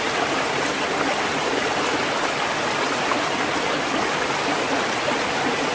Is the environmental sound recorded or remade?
recorded